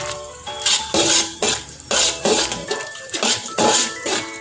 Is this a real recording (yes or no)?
no